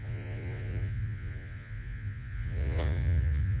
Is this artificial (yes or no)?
yes